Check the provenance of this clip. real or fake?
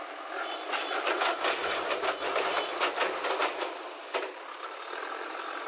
real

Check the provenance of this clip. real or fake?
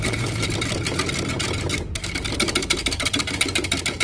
real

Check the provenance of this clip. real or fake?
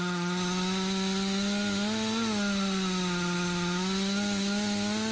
real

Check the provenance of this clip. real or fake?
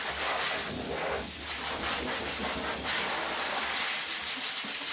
real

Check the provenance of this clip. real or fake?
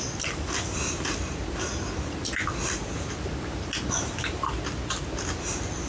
real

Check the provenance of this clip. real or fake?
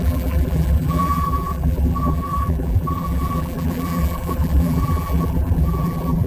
fake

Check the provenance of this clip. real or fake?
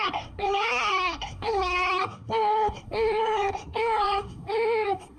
fake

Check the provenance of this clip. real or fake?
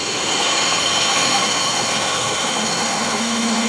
fake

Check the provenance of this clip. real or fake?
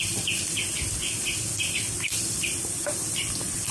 fake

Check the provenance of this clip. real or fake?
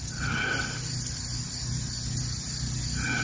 real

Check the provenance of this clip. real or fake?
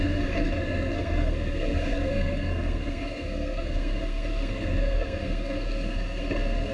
fake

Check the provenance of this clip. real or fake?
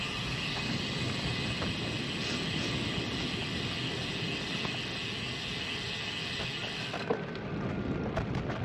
real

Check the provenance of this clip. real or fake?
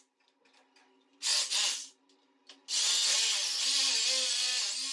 real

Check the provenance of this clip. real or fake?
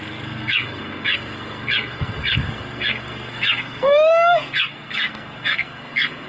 fake